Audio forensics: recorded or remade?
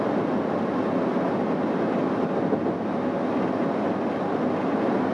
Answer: recorded